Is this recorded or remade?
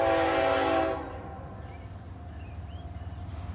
recorded